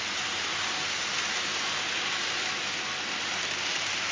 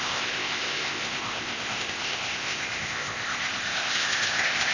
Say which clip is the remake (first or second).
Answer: second